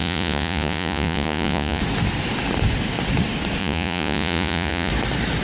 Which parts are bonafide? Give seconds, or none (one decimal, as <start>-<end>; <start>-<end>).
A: 1.8-3.6; 4.9-5.4